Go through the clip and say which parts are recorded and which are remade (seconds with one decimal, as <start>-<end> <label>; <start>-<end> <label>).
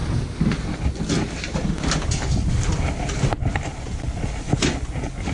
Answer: 0.0-5.3 recorded